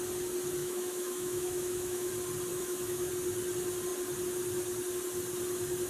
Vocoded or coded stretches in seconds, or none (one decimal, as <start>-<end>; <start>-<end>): 0.6-2.1; 2.5-3.1